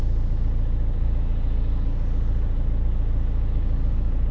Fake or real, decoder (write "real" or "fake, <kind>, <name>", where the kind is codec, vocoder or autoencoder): real